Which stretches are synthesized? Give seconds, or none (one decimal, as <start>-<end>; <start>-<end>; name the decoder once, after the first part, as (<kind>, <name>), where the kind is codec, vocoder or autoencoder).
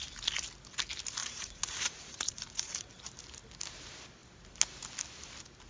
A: 1.2-2.7 (vocoder, Vocos)